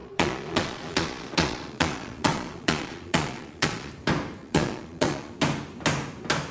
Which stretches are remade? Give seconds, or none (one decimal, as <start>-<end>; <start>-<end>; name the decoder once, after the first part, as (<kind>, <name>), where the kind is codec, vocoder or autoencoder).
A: 0.0-3.9 (vocoder, Vocos); 4.4-5.3